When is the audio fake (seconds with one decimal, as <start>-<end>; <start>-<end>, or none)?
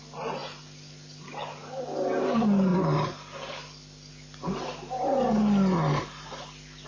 none